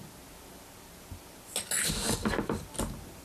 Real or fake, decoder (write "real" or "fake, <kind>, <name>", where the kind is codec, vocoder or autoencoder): real